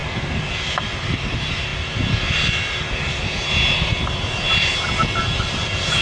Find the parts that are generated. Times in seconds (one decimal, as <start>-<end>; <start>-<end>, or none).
0.0-1.7; 2.9-6.0